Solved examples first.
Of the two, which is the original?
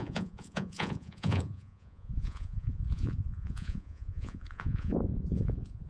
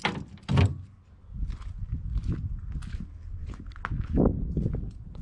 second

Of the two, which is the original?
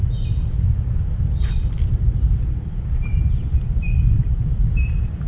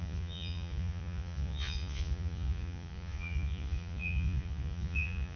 first